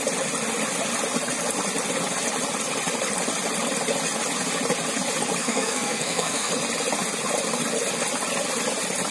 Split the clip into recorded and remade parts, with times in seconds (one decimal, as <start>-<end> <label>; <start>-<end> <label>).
0.0-5.4 recorded; 5.4-6.5 remade; 6.5-9.1 recorded